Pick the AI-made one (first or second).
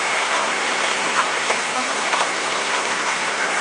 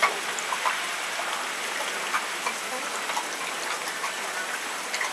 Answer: first